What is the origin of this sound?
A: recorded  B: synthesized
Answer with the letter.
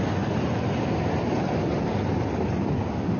A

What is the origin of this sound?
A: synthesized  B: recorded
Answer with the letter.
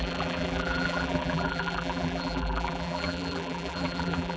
A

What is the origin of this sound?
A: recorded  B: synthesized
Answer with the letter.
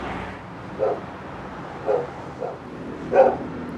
B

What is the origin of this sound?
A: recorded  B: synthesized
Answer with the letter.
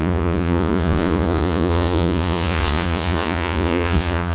B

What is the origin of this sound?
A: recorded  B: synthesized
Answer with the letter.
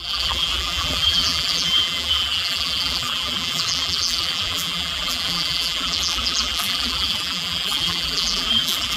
B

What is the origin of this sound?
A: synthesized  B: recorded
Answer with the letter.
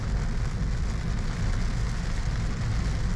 B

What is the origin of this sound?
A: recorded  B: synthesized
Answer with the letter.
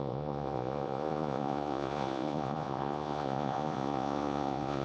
B